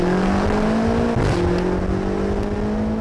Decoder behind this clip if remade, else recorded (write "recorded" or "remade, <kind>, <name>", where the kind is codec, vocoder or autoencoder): recorded